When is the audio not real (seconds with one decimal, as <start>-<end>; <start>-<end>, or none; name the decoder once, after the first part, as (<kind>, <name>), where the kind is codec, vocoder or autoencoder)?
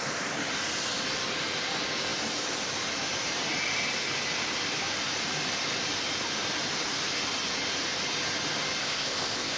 8.8-9.6 (codec, ZipCodec)